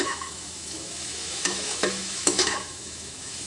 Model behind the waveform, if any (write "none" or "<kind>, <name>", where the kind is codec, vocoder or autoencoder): autoencoder, DAC-VAE